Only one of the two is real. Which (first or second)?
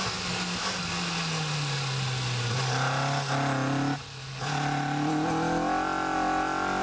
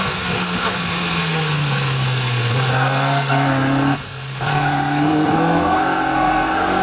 first